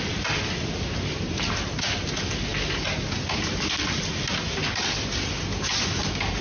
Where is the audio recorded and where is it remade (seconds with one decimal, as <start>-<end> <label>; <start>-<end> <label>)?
0.0-6.4 recorded